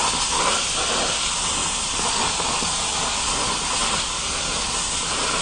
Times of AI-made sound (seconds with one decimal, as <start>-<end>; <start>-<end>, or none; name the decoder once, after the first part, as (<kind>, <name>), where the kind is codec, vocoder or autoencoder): none